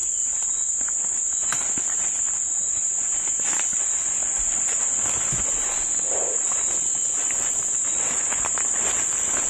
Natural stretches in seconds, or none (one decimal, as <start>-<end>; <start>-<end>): 0.0-9.5